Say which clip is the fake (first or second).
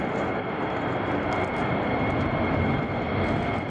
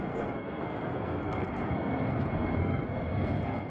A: second